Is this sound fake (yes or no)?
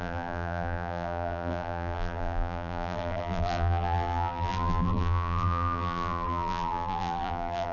yes